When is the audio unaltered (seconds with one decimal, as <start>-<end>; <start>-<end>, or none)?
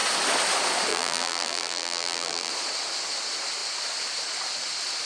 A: 0.0-0.9; 2.5-5.1